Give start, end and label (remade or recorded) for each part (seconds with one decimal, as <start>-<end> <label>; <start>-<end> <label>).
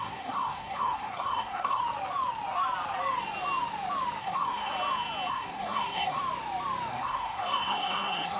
0.0-1.8 remade; 1.8-4.2 recorded; 4.2-4.7 remade; 4.7-5.3 recorded; 5.3-6.2 remade; 6.2-6.9 recorded; 6.9-8.4 remade